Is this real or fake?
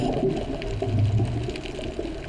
real